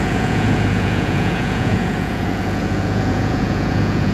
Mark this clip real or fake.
fake